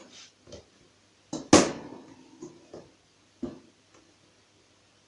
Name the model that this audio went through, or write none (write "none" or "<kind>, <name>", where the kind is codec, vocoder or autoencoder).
none